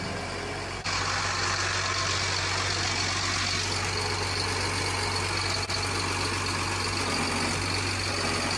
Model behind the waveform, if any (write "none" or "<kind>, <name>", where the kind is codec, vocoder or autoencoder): none